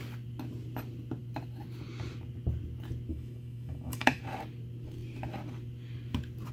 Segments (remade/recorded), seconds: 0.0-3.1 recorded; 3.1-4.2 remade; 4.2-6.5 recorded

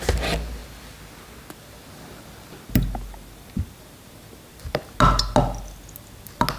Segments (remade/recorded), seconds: 0.0-6.6 recorded